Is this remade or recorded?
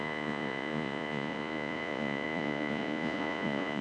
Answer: remade